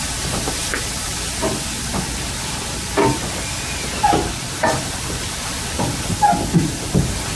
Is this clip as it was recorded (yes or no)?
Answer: yes